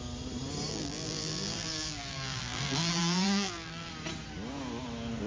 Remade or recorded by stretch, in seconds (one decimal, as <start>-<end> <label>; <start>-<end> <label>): 0.0-0.7 recorded; 0.7-3.9 remade; 3.9-5.3 recorded